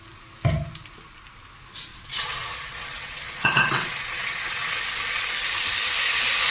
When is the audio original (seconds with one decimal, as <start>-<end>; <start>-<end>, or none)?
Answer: 0.0-1.9; 4.8-6.5